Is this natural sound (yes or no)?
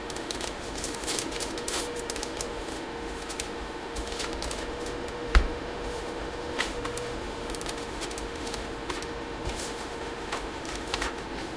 no